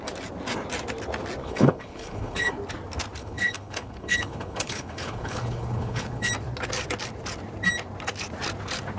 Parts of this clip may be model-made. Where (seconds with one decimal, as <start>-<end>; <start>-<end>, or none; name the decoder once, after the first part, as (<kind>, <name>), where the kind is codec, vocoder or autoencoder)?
1.4-2.5 (codec, HILCodec); 3.2-6.3